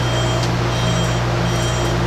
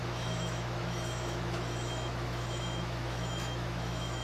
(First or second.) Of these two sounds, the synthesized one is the second